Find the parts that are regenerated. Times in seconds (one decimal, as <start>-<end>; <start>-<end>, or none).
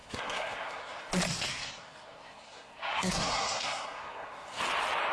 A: 0.0-1.1; 1.5-4.6